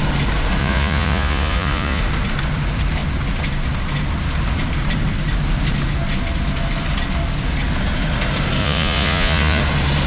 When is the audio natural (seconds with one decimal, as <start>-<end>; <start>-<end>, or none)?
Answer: 0.0-0.6; 2.0-8.6; 9.6-10.1